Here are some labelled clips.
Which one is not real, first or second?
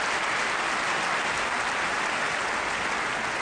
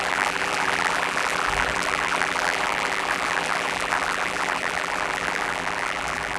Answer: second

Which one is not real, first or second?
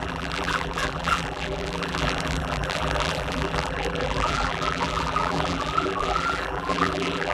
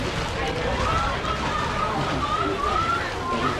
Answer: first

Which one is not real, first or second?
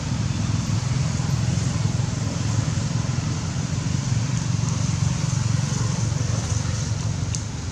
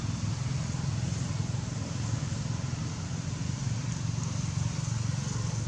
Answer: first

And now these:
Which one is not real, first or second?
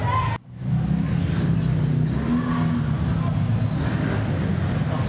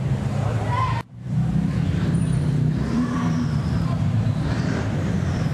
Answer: second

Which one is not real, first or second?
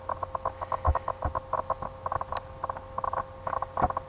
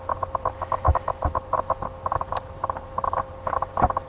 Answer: second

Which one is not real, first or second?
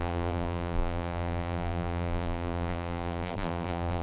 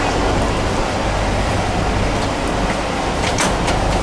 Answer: first